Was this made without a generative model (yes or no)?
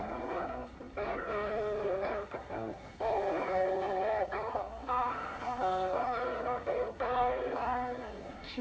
no